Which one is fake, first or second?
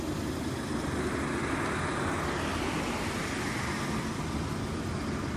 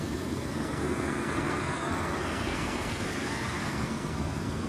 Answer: second